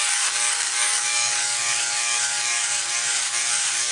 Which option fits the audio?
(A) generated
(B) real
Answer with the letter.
A